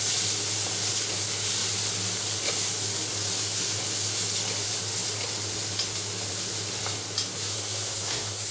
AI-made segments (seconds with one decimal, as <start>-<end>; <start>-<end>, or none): 7.5-8.5